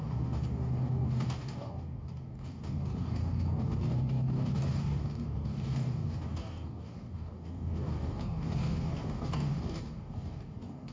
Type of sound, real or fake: fake